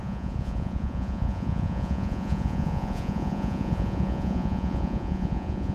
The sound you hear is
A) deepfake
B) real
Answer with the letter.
A